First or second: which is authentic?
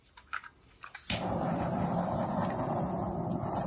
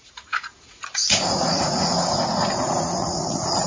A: first